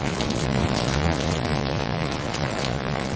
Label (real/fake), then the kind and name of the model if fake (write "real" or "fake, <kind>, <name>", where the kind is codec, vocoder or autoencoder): fake, vocoder, Vocos